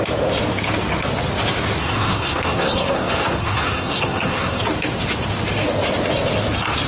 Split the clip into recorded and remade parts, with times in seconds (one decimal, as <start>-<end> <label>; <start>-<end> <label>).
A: 0.0-1.8 recorded; 1.8-4.6 remade; 4.6-6.9 recorded